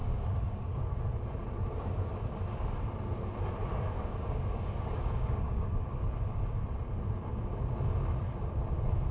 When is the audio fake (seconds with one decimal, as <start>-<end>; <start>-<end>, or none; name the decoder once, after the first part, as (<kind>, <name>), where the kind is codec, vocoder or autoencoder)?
0.0-1.0 (codec, DAC); 3.7-6.0